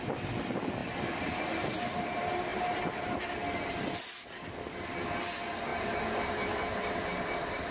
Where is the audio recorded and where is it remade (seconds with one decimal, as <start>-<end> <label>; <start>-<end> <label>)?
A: 0.0-2.5 recorded; 2.5-3.3 remade; 3.3-5.7 recorded; 5.7-7.7 remade